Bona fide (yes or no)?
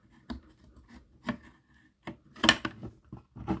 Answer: yes